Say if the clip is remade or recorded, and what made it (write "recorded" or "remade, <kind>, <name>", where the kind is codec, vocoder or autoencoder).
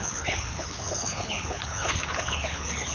remade, codec, HILCodec